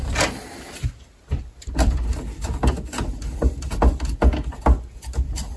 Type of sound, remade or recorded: recorded